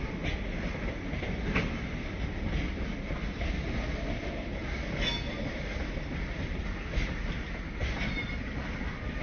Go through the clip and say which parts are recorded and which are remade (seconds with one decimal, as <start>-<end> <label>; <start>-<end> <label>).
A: 0.0-9.2 recorded